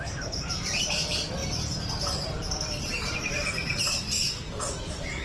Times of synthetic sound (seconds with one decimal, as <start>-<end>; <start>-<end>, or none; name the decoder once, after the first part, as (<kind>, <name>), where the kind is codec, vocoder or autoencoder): 0.0-5.2 (vocoder, BigVGAN v2)